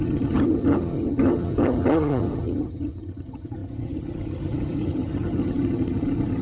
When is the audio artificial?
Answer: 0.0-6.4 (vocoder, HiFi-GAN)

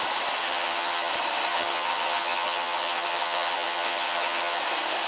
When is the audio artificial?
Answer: 0.4-1.1 (vocoder, HiFi-GAN); 1.5-4.6

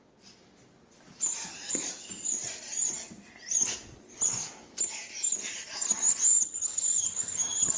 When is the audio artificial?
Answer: 6.3-7.8 (vocoder, HiFi-GAN)

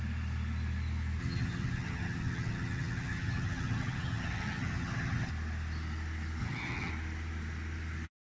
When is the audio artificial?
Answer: 1.2-5.3 (vocoder, HiFi-GAN); 6.4-6.9

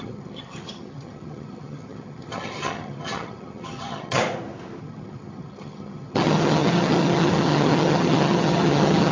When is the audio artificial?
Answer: 0.0-4.2 (vocoder, HiFi-GAN); 4.8-9.1

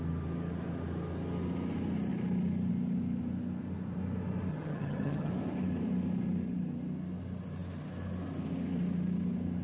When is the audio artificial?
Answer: 4.5-5.3 (vocoder, HiFi-GAN)

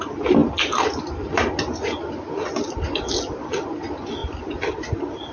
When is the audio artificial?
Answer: none

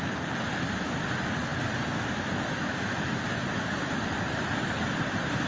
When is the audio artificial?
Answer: none